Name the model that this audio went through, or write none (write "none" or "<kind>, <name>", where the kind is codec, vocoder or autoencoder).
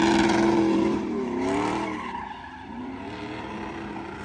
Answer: vocoder, BigVGAN v2